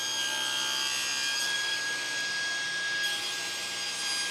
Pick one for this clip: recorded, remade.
recorded